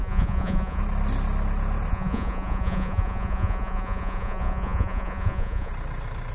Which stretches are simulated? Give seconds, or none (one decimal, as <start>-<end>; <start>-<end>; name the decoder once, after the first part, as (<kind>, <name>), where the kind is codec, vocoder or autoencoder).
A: 0.0-0.8 (vocoder, Vocos); 1.9-5.7

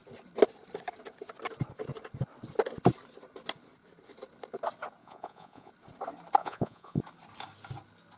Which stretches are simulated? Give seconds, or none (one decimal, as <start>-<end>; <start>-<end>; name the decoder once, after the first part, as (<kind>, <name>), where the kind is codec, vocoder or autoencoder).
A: 5.0-5.7 (vocoder, Vocos); 6.4-7.0

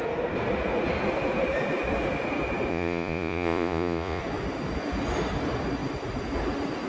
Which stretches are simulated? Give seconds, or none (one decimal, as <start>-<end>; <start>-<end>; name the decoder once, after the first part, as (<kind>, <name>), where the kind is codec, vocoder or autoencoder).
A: 2.7-4.2 (vocoder, Vocos)

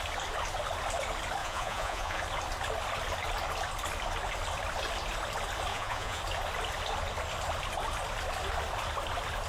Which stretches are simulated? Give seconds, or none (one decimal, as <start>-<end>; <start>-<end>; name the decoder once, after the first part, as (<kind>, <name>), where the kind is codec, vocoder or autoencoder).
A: 1.4-2.2 (vocoder, Vocos); 5.7-6.2

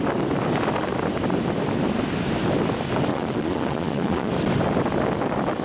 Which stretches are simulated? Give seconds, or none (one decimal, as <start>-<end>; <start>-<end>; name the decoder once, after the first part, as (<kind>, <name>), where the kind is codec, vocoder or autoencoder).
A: 3.1-4.3 (vocoder, Vocos)

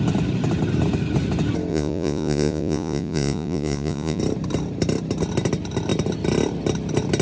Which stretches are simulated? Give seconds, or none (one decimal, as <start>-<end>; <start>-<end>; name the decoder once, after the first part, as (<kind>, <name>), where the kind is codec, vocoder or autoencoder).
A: 1.7-4.2 (vocoder, Vocos)

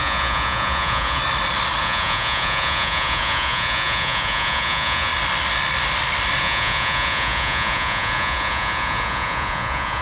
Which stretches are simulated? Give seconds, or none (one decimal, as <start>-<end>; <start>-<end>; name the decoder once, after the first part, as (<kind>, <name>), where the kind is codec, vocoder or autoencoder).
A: 0.0-1.2 (vocoder, Vocos); 1.8-5.1; 6.4-10.0